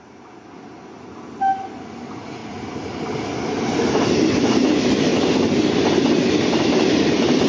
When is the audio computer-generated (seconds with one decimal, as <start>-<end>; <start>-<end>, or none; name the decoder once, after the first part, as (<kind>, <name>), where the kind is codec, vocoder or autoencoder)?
none